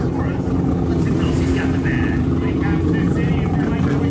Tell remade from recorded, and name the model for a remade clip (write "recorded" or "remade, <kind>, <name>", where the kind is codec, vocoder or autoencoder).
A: recorded